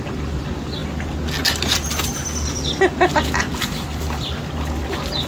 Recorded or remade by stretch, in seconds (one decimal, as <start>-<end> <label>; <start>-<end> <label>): 0.0-5.3 recorded